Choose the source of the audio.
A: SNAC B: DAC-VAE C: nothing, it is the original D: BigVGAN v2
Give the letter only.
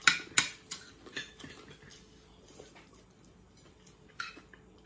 C